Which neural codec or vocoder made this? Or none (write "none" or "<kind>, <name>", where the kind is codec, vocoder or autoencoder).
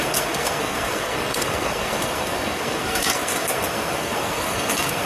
codec, SNAC